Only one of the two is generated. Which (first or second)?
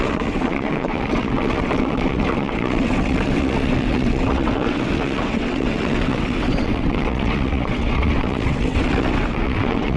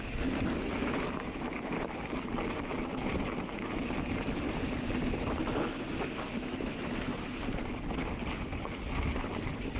first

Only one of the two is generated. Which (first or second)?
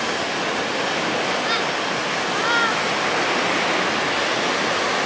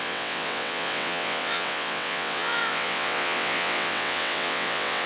second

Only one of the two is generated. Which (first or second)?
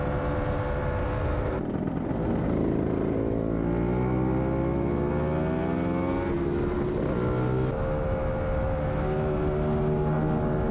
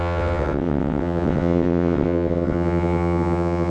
second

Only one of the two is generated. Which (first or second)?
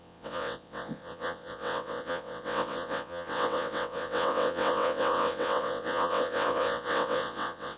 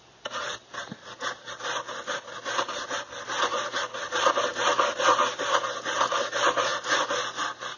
first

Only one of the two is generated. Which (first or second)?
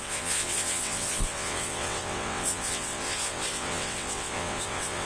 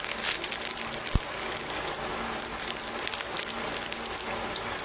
first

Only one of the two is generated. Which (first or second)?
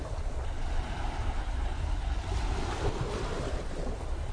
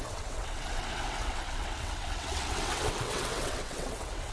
second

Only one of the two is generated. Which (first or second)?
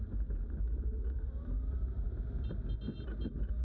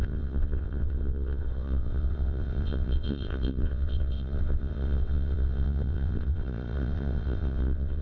second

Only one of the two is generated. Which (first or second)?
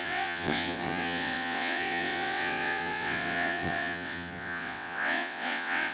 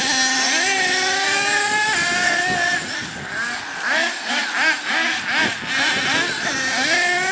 first